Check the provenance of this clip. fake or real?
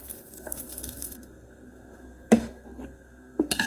fake